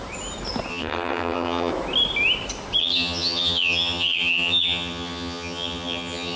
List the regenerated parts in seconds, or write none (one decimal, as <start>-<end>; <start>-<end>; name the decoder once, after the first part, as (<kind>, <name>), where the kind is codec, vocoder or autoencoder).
0.7-1.7 (vocoder, HiFi-GAN); 2.8-6.4